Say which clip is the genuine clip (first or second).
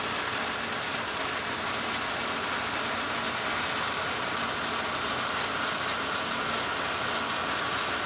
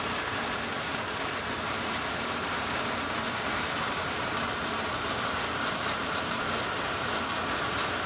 first